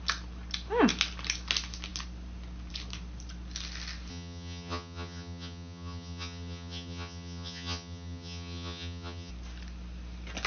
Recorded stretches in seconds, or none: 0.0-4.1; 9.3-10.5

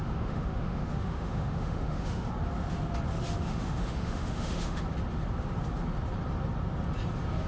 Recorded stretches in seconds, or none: 2.3-3.4; 4.8-7.5

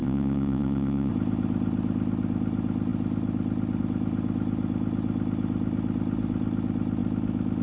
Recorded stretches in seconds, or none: 1.1-7.6

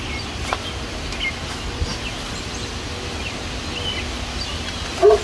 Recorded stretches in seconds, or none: 0.0-5.2